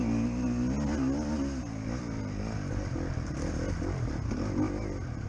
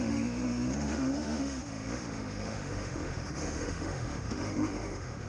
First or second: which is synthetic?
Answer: second